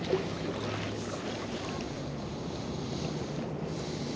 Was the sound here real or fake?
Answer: real